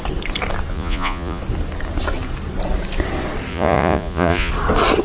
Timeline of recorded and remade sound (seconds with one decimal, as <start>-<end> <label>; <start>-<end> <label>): 0.0-0.7 recorded; 0.7-1.4 remade; 1.4-3.5 recorded; 3.5-4.5 remade; 4.5-5.0 recorded

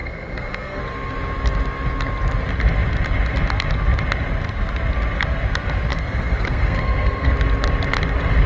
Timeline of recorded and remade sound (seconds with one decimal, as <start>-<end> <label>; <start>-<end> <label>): 0.0-0.8 remade; 0.8-5.9 recorded; 5.9-7.3 remade; 7.3-8.5 recorded

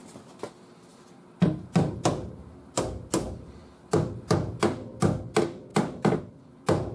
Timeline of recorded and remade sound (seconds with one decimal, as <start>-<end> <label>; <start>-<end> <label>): 0.0-5.7 recorded; 5.7-6.3 remade; 6.3-6.9 recorded

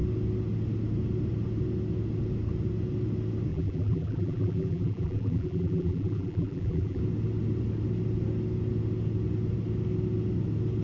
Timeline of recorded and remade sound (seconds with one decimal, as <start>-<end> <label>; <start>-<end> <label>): 0.0-3.5 recorded; 3.5-7.0 remade; 7.0-10.8 recorded